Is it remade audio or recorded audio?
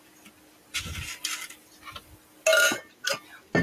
recorded